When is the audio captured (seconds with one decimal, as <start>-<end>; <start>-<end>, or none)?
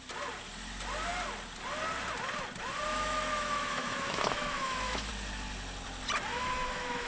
0.0-2.9; 5.1-6.3